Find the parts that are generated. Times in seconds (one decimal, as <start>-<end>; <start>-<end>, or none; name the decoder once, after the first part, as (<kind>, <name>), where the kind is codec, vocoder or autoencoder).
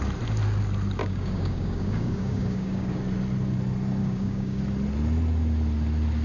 1.0-3.0 (codec, DAC); 4.0-4.6